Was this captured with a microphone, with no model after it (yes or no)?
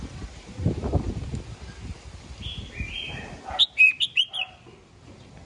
yes